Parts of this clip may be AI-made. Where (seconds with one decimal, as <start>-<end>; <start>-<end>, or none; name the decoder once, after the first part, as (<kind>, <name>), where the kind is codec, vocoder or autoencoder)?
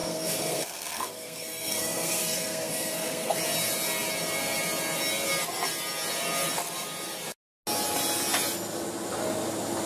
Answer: 0.0-3.4 (codec, SNAC)